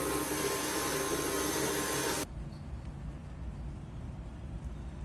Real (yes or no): yes